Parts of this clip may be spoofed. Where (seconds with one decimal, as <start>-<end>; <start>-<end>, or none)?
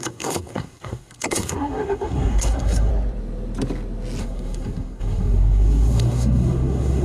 0.0-2.9; 4.2-7.0